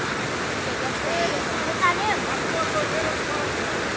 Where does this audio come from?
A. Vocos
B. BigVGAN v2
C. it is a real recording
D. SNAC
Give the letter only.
C